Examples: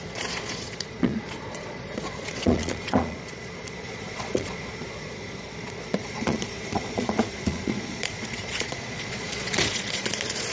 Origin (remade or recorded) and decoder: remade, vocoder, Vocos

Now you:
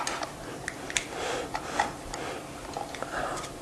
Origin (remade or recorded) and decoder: recorded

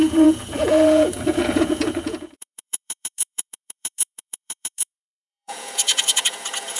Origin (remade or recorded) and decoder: remade, vocoder, Vocos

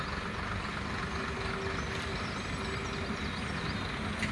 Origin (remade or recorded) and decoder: recorded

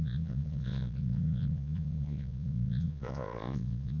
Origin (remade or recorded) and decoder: remade, vocoder, Vocos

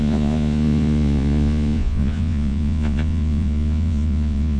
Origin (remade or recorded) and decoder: remade, vocoder, Vocos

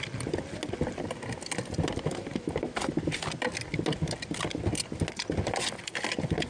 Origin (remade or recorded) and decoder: recorded